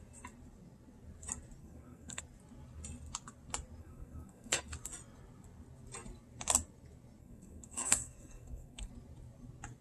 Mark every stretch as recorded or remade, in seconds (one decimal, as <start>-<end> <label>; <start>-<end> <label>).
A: 0.0-1.6 recorded; 1.6-2.2 remade; 2.2-3.8 recorded; 3.8-4.6 remade; 4.6-7.2 recorded; 7.2-8.9 remade; 8.9-9.8 recorded